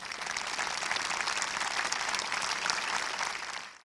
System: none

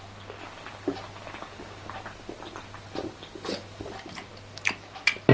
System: none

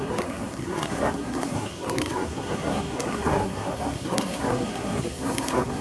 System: codec, SNAC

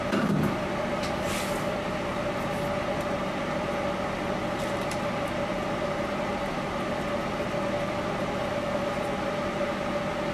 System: none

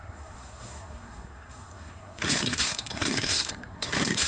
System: codec, SNAC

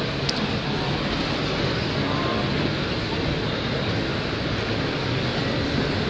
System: none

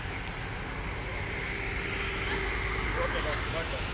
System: none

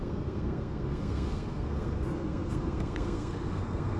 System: codec, SNAC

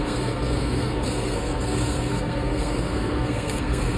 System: codec, SNAC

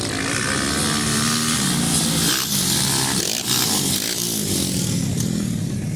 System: none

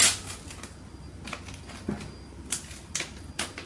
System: none